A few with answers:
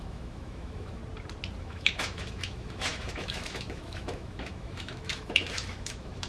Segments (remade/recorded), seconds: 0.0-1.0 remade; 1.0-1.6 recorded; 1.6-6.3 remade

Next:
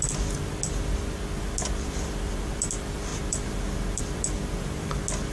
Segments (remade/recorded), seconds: 0.0-5.3 recorded

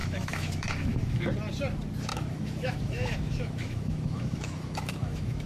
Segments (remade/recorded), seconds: 0.0-1.3 remade; 1.3-2.1 recorded; 2.1-5.5 remade

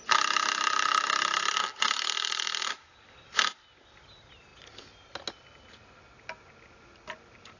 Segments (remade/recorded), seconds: 0.0-7.6 recorded